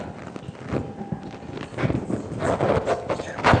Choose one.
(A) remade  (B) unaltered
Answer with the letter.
B